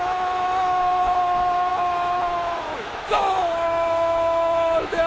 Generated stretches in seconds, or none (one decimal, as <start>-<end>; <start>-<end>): 0.0-5.1